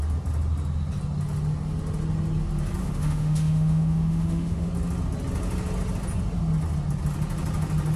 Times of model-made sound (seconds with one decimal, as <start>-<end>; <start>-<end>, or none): 2.8-4.7